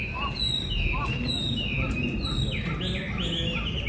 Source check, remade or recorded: recorded